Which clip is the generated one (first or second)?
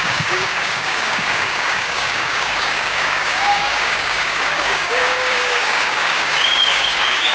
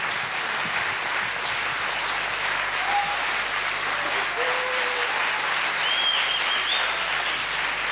first